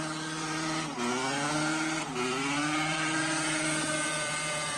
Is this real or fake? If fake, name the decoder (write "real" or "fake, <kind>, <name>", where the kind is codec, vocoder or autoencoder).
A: fake, vocoder, BigVGAN v2